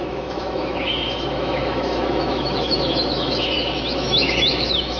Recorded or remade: remade